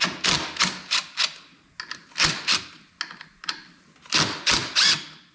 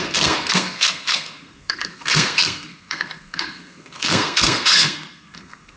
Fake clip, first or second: second